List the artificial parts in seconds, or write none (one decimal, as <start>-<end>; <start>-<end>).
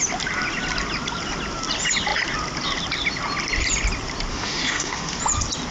4.3-5.2